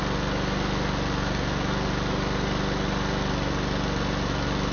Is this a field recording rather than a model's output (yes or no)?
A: yes